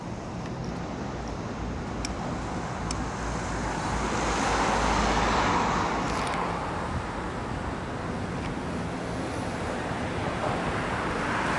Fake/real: real